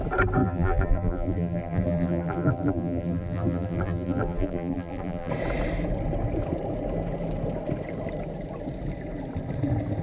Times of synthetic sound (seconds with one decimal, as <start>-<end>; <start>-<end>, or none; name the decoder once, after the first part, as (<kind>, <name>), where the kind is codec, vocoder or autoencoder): 0.4-5.3 (vocoder, BigVGAN v2)